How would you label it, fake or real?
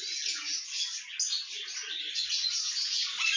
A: real